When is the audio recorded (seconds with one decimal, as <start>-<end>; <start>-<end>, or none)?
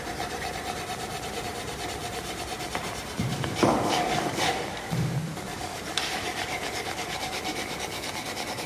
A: 0.0-3.3